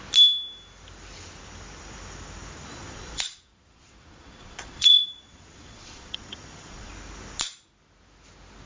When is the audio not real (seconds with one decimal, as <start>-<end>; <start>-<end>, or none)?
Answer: 2.7-6.9